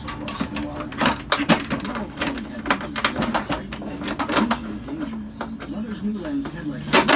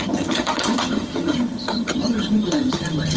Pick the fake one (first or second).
second